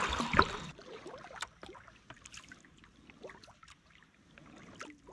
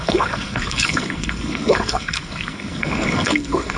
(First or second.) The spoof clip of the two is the second